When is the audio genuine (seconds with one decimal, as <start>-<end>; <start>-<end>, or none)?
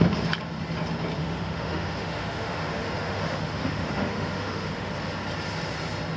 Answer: 0.0-1.2; 4.9-6.2